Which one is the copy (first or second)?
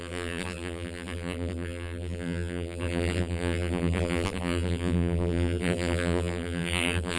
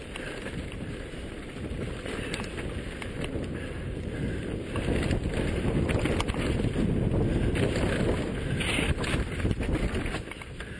first